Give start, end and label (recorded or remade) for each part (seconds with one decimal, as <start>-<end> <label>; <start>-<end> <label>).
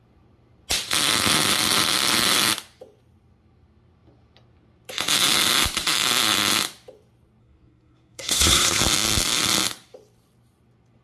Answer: 0.0-7.4 recorded; 7.4-8.8 remade; 8.8-11.0 recorded